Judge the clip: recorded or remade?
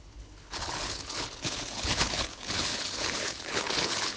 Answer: remade